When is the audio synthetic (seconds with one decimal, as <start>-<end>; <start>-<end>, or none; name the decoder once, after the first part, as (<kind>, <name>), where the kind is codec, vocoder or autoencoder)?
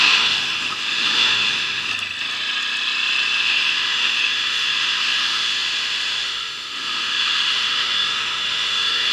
0.0-1.9 (autoencoder, DAC-VAE); 3.4-9.1